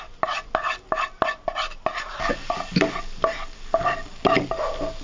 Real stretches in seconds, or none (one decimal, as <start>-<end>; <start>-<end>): 0.0-1.9; 2.7-5.0